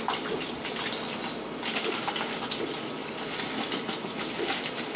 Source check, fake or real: real